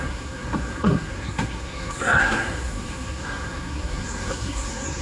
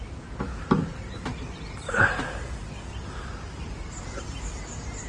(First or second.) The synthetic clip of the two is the first